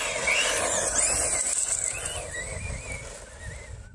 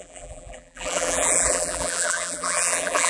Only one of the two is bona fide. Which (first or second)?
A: first